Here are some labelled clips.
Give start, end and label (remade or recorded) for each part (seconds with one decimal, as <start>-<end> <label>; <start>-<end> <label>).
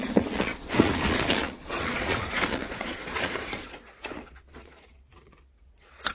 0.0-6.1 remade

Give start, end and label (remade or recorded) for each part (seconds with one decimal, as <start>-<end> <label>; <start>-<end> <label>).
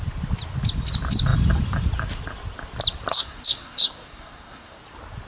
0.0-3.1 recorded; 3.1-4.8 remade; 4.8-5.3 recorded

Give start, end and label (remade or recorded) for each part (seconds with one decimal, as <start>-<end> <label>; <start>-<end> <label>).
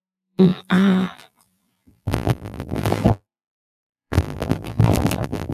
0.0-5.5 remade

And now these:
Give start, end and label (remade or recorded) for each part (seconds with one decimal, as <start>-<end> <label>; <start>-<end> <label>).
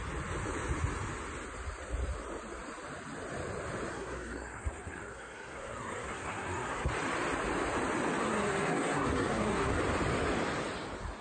0.0-3.9 recorded; 3.9-6.9 remade; 6.9-8.2 recorded; 8.2-9.8 remade; 9.8-11.2 recorded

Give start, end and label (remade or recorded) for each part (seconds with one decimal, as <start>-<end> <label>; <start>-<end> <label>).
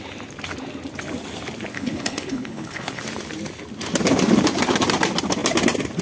0.0-1.7 recorded; 1.7-3.0 remade; 3.0-6.0 recorded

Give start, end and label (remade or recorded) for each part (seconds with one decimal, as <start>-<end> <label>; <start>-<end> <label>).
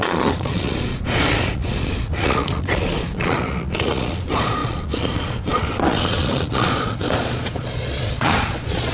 0.0-8.9 remade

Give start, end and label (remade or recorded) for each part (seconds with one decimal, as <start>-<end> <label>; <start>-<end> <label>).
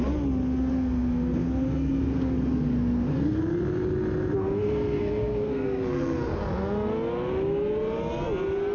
0.0-0.7 recorded; 0.7-3.4 remade; 3.4-4.4 recorded; 4.4-6.4 remade; 6.4-8.7 recorded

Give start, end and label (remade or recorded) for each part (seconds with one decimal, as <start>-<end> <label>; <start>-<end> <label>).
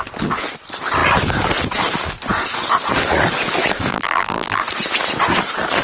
0.0-3.9 recorded; 3.9-4.6 remade; 4.6-5.8 recorded